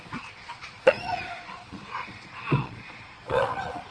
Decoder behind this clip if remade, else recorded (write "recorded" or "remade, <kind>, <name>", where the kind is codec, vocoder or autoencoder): remade, vocoder, Vocos